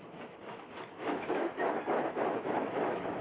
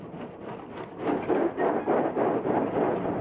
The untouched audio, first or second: second